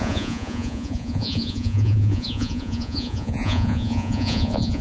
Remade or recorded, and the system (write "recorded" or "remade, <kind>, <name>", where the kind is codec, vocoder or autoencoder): remade, vocoder, Vocos